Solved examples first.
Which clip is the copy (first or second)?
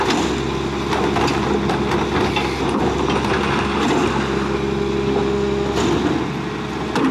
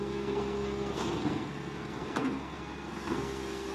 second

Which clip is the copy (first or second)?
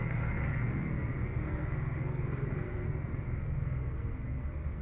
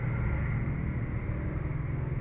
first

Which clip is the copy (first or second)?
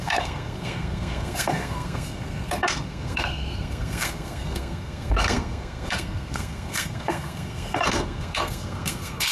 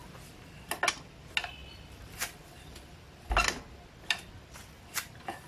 first